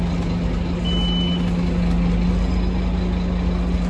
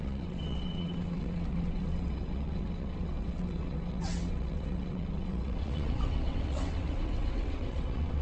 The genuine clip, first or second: first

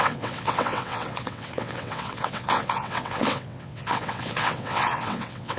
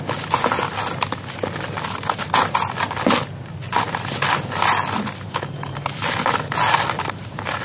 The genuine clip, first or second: second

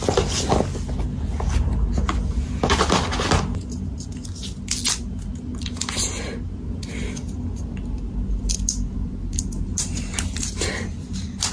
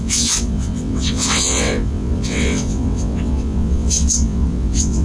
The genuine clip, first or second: first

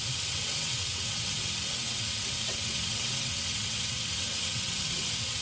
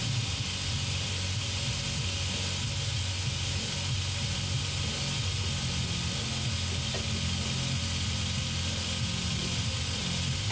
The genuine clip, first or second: second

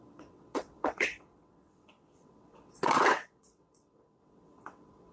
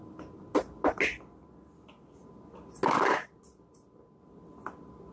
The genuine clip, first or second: second